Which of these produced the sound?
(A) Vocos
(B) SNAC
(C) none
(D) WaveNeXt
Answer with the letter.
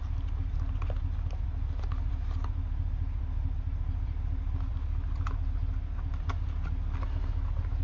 C